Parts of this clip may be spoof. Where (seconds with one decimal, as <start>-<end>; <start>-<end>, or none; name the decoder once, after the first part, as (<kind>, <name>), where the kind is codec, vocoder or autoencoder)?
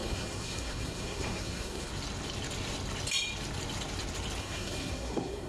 0.0-1.9 (codec, SNAC); 4.4-5.5